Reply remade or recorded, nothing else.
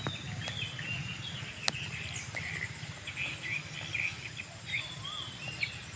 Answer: recorded